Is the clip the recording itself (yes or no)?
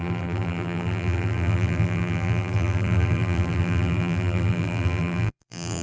no